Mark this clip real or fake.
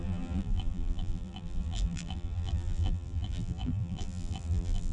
fake